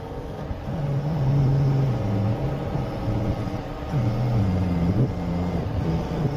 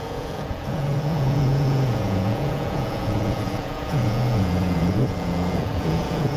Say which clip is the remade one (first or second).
second